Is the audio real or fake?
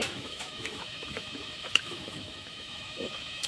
fake